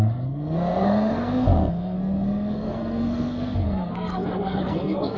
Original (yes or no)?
no